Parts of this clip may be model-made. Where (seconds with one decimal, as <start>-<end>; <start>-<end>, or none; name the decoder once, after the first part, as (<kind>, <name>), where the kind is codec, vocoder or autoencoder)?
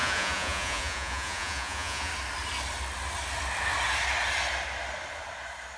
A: 0.0-2.1 (vocoder, Vocos)